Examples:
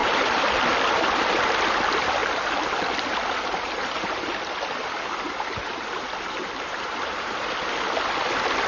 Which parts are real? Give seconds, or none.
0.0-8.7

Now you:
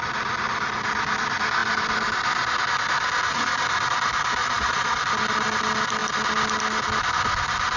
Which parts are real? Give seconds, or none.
0.0-4.4; 5.0-7.8

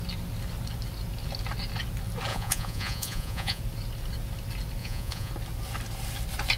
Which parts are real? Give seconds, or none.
0.0-2.3; 3.6-4.8; 5.3-6.6

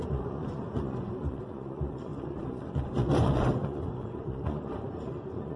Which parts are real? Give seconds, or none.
none

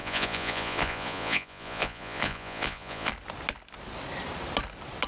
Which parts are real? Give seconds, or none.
3.1-5.1

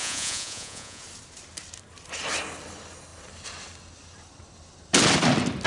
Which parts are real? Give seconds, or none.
1.0-5.7

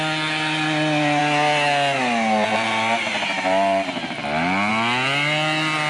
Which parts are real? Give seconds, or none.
0.0-5.9